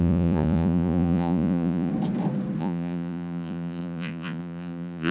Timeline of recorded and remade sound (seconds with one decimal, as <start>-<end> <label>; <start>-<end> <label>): 0.0-1.9 remade; 1.9-2.6 recorded; 2.6-5.1 remade